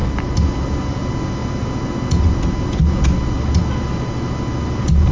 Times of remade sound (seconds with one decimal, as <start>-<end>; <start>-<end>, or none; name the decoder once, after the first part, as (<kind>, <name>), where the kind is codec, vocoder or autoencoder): none